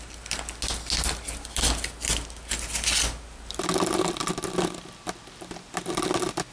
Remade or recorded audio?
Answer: recorded